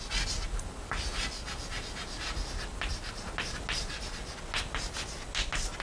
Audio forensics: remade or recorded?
recorded